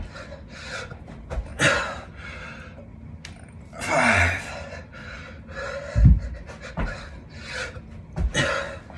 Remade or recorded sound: recorded